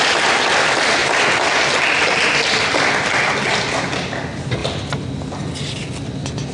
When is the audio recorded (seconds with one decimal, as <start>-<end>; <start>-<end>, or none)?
0.0-6.5